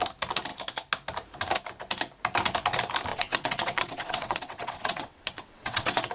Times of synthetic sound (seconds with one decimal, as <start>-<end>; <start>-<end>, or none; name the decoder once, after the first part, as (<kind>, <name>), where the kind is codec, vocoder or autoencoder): 3.1-6.1 (vocoder, WaveNeXt)